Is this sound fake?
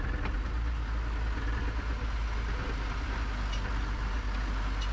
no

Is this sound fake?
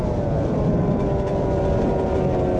no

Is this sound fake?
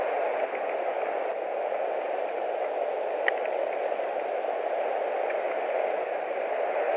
no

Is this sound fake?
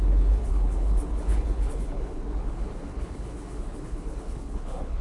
yes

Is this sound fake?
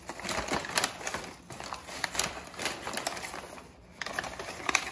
no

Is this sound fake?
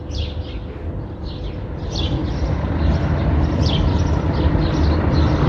no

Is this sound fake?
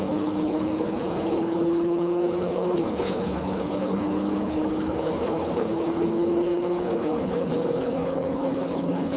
yes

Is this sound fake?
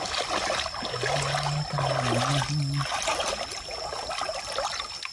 no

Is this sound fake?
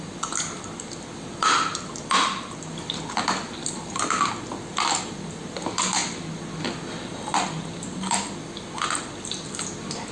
no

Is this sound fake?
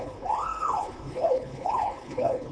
yes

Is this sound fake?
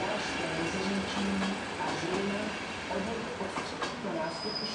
no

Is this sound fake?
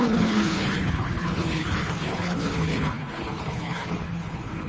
yes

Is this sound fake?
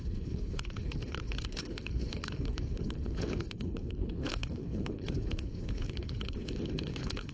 yes